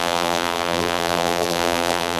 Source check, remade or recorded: remade